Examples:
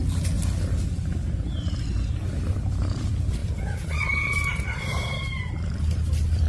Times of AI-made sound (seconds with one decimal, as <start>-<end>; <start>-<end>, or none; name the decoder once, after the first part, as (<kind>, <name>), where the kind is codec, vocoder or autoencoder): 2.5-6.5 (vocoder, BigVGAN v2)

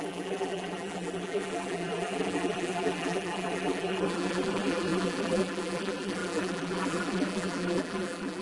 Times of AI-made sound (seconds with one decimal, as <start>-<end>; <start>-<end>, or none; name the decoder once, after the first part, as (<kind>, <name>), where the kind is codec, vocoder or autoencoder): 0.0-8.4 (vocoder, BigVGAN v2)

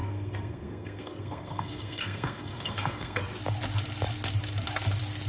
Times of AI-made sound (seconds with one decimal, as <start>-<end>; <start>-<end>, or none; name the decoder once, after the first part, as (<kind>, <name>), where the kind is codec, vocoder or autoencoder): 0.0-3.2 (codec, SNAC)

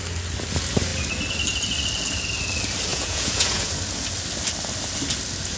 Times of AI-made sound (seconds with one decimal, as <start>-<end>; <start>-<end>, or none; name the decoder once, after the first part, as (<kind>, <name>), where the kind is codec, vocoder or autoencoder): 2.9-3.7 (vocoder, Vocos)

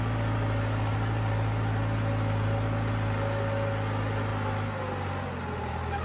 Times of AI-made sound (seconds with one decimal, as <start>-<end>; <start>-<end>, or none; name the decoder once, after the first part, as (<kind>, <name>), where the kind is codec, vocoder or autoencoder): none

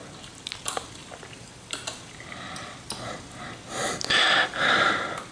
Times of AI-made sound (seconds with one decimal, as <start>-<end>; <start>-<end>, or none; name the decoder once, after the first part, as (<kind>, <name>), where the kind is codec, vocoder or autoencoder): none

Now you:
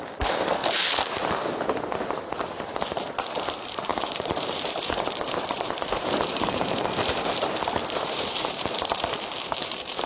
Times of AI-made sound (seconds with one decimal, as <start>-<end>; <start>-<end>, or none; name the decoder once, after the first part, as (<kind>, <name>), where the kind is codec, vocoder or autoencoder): 0.0-0.6 (vocoder, BigVGAN v2); 2.5-10.1

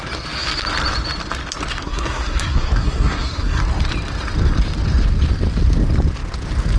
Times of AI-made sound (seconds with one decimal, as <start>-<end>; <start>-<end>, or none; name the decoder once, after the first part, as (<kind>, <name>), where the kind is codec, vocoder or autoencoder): 1.8-3.6 (codec, SNAC)